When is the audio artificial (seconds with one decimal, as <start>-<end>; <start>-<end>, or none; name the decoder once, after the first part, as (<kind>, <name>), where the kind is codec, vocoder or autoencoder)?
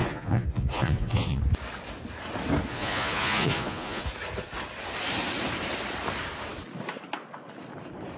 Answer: 0.0-1.4 (vocoder, Vocos); 2.7-4.1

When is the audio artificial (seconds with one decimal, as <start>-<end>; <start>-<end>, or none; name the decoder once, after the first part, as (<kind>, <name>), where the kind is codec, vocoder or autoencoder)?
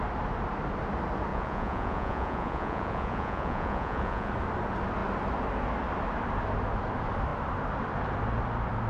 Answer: 1.3-4.3 (vocoder, Vocos)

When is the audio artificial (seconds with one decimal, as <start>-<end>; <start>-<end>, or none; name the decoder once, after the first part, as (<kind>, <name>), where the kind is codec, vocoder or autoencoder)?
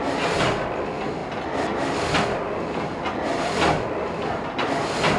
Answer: none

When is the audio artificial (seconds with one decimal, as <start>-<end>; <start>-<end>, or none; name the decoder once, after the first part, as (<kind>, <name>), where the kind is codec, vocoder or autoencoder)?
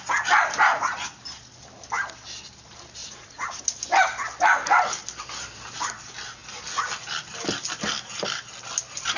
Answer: 3.0-3.6 (vocoder, Vocos)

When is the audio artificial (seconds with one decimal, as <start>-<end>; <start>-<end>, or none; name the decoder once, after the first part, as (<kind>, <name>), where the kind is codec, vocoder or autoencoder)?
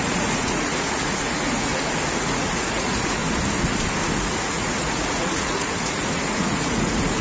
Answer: 0.0-1.7 (vocoder, Vocos); 2.2-3.2; 4.2-7.2